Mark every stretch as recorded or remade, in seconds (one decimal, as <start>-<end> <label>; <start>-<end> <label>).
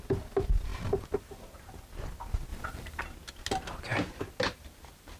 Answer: 0.0-5.2 recorded